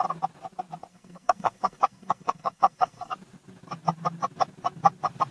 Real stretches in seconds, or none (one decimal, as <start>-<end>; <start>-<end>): 0.0-0.9; 3.1-5.3

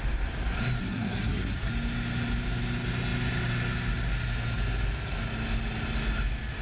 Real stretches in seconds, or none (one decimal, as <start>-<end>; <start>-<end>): 0.0-0.8; 1.7-6.6